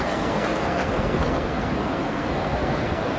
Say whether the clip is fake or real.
fake